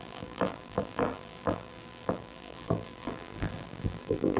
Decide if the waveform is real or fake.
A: fake